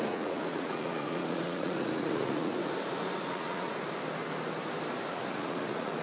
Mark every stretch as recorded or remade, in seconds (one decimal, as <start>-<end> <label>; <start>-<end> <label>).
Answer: 0.0-2.6 remade; 2.6-3.3 recorded; 3.3-3.7 remade; 3.7-5.1 recorded; 5.1-6.0 remade